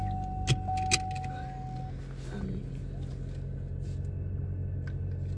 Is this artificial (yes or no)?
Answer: no